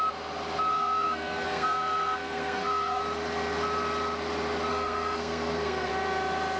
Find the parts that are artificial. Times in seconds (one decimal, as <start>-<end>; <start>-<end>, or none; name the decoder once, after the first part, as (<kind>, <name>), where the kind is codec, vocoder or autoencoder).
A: 0.7-3.0 (codec, SNAC); 4.7-5.9